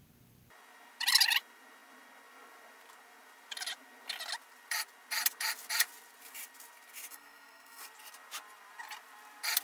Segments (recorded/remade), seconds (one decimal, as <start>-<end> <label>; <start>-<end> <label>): 0.0-7.1 recorded; 7.1-7.8 remade; 7.8-9.6 recorded